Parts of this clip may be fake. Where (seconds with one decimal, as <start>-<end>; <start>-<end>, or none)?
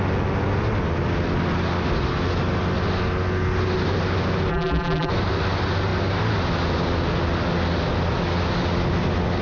4.5-5.1